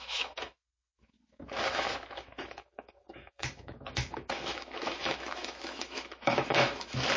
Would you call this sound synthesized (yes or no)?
yes